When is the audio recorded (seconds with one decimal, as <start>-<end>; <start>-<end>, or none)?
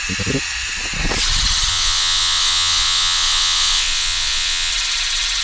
0.0-1.7; 4.7-5.4